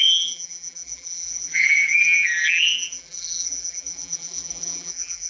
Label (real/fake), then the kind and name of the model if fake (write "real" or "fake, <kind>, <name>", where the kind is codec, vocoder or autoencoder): fake, vocoder, BigVGAN v2